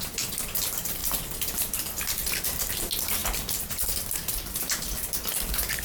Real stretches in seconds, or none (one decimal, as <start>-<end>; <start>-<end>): 0.0-5.8